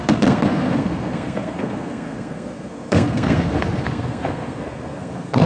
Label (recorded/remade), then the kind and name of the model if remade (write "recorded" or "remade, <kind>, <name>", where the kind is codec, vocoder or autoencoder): remade, codec, SNAC